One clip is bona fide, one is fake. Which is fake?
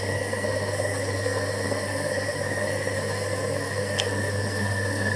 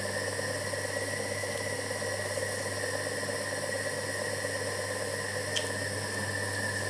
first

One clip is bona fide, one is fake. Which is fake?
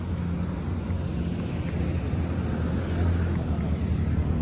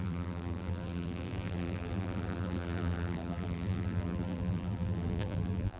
second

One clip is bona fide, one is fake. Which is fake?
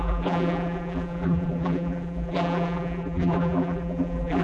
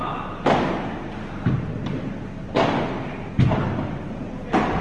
first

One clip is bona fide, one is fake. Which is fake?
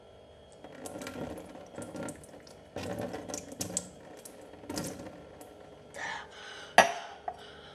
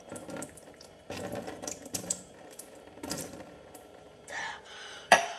second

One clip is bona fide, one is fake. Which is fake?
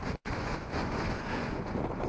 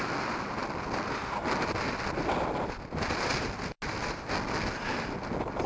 first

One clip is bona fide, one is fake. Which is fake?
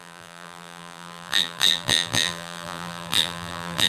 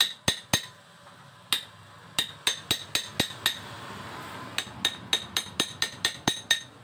first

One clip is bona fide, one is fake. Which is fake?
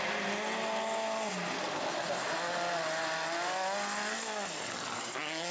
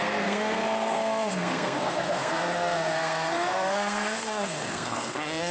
second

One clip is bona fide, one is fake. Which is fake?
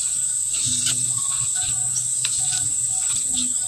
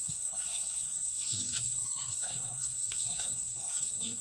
second